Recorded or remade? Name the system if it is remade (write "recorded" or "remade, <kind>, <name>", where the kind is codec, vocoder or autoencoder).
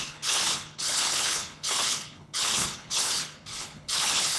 remade, codec, HILCodec